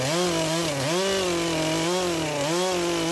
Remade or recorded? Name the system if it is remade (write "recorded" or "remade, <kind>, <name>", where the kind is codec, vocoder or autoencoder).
recorded